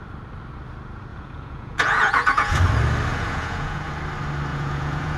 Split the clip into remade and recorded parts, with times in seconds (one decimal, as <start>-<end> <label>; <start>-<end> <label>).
0.0-1.1 recorded; 1.1-2.6 remade; 2.6-3.1 recorded; 3.1-3.9 remade; 3.9-4.5 recorded; 4.5-5.2 remade

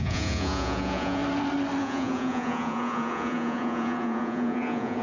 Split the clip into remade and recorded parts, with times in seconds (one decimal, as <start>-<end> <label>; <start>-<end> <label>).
0.0-1.2 remade; 1.2-1.8 recorded; 1.8-5.0 remade